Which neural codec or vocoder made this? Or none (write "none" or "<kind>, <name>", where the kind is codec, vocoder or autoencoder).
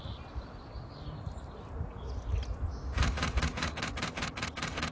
none